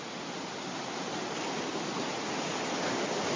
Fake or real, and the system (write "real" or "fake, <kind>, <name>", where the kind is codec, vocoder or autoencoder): real